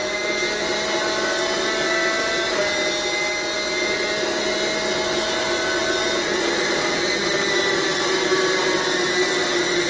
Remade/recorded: recorded